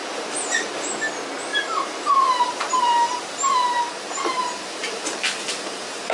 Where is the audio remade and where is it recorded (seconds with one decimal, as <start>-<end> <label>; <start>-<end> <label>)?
0.0-0.9 remade; 0.9-1.5 recorded; 1.5-5.2 remade; 5.2-6.1 recorded